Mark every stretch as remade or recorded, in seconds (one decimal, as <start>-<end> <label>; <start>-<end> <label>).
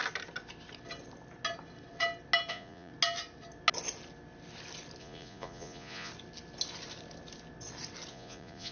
0.0-2.5 recorded; 2.5-2.9 remade; 2.9-5.0 recorded; 5.0-6.1 remade; 6.1-8.1 recorded; 8.1-8.7 remade